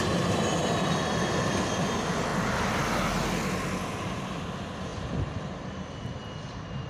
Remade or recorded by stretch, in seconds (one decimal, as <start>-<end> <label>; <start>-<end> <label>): 0.0-4.9 recorded; 4.9-6.1 remade; 6.1-6.9 recorded